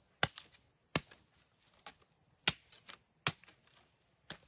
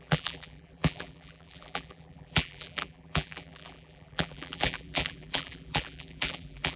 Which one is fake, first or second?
second